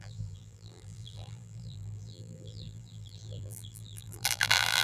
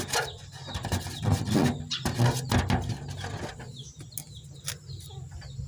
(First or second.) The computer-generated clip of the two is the first